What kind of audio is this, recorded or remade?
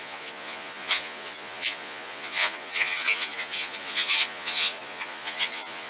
remade